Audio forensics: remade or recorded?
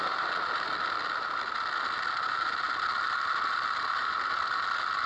recorded